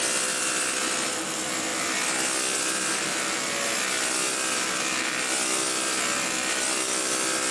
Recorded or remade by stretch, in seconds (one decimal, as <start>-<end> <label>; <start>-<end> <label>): 0.0-7.5 recorded